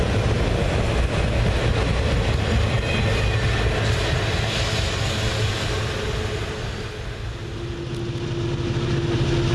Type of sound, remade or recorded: recorded